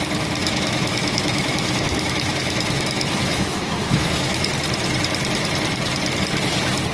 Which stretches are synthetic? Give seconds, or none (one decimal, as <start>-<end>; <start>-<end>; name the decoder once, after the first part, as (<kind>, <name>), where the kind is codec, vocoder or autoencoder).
0.4-4.5 (autoencoder, DAC-VAE)